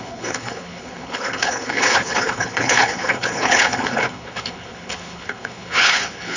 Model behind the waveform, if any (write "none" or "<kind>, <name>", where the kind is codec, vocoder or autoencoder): codec, HILCodec